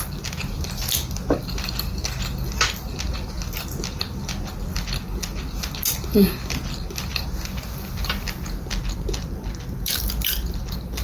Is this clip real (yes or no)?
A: yes